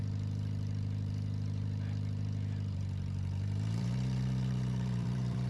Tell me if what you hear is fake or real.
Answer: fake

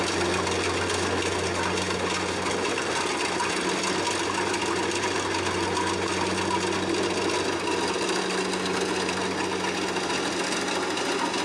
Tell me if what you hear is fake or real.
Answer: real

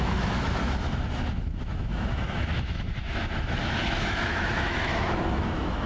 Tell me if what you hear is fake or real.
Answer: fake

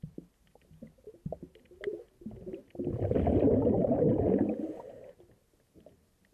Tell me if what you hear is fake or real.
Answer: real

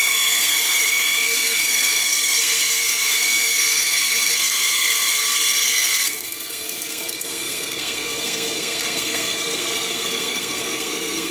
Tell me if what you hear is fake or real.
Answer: fake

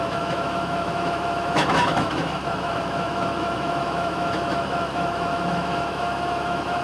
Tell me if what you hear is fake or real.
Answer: fake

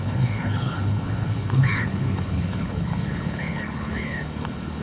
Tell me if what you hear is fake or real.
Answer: fake